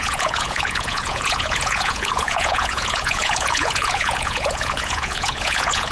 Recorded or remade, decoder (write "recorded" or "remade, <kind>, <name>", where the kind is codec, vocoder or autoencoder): remade, vocoder, Vocos